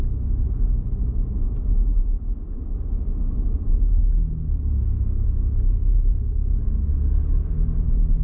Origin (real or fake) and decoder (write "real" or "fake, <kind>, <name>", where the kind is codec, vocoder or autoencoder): real